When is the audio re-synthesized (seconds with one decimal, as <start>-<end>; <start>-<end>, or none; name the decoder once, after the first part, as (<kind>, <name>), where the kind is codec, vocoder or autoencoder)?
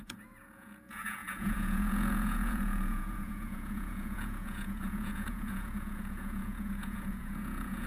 0.0-7.9 (vocoder, Vocos)